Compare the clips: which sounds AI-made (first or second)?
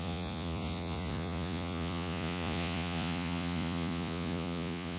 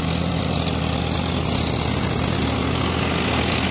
first